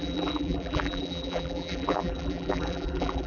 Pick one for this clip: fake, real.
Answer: fake